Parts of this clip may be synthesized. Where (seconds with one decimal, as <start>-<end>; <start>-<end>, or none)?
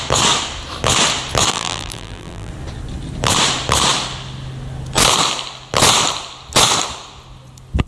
1.5-2.5